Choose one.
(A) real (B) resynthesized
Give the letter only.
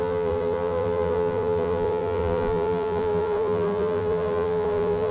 B